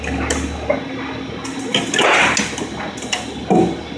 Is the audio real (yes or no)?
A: yes